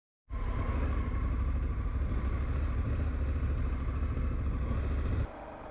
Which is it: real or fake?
real